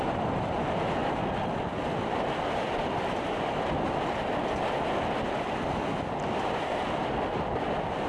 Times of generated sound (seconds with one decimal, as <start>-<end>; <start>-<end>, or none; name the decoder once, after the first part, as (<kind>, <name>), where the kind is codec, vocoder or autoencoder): none